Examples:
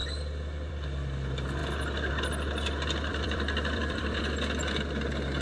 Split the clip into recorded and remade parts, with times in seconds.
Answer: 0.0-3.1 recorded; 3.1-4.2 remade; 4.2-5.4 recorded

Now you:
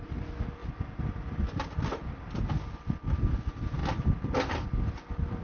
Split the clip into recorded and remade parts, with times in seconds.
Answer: 0.0-5.4 recorded

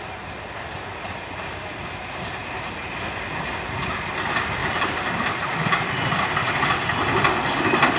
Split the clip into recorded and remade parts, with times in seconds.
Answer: 0.0-4.6 recorded; 4.6-5.9 remade; 5.9-8.0 recorded

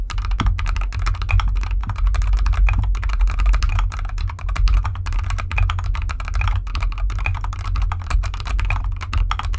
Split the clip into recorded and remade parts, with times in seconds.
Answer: 0.0-9.6 recorded

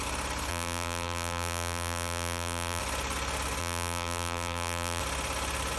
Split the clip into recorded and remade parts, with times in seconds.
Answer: 0.0-0.5 recorded; 0.5-2.8 remade; 2.8-3.6 recorded; 3.6-5.0 remade; 5.0-5.8 recorded